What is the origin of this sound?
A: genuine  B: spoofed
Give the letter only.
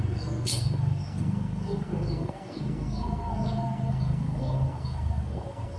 B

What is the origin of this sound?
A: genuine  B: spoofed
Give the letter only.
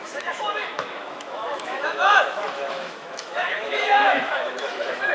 B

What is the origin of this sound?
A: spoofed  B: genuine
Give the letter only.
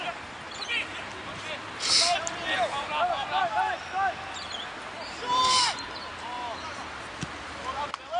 B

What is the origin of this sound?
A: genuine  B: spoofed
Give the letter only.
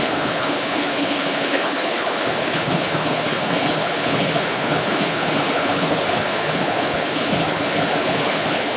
B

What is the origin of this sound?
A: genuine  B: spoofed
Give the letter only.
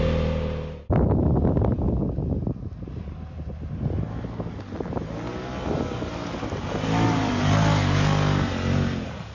A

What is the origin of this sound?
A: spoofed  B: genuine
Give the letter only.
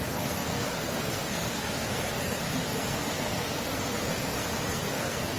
A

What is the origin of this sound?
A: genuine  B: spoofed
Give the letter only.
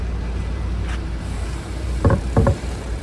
B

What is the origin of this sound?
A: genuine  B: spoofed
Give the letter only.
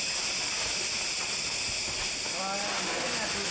A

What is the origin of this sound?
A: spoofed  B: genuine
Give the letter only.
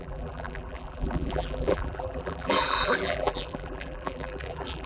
A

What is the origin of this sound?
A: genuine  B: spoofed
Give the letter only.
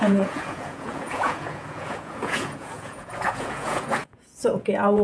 B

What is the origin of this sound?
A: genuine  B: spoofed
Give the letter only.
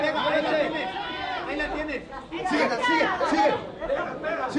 A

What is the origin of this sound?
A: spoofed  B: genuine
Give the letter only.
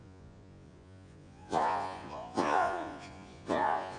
A